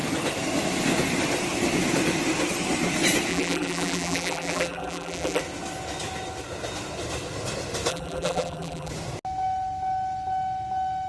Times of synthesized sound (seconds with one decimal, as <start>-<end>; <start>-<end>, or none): 3.3-5.4; 7.9-8.9